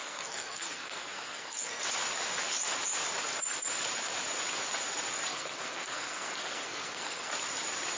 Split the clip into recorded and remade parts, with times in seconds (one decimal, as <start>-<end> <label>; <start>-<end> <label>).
0.0-1.8 remade; 1.8-5.3 recorded; 5.3-7.3 remade; 7.3-8.0 recorded